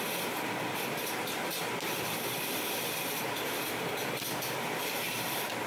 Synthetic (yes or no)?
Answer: yes